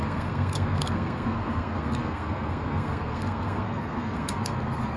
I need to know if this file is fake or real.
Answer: fake